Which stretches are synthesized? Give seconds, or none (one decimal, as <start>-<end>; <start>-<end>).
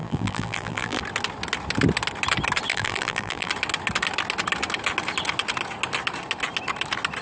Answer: 0.0-1.0; 2.7-3.5